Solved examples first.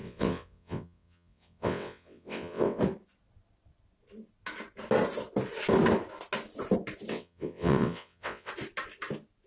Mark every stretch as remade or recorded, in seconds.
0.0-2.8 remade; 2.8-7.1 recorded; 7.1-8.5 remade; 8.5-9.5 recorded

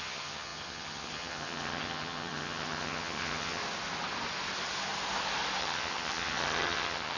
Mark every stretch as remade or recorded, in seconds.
0.0-3.6 remade; 3.6-5.6 recorded; 5.6-7.2 remade